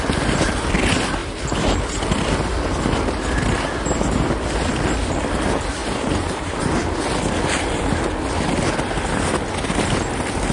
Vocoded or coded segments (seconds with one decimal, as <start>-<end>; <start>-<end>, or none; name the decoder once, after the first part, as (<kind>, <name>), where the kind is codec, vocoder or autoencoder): 5.8-6.6 (vocoder, BigVGAN v2)